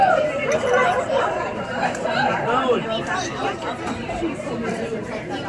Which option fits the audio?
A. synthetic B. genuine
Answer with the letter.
A